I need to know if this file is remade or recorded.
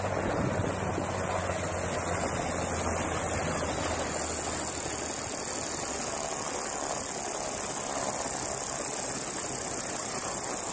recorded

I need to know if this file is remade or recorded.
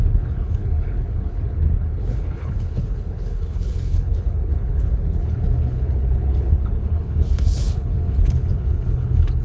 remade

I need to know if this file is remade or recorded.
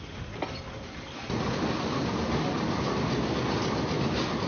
recorded